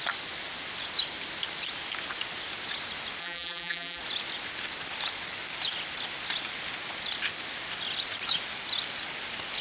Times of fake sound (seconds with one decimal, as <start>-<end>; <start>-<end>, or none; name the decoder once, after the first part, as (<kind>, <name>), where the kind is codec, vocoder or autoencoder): 3.2-4.0 (vocoder, BigVGAN v2)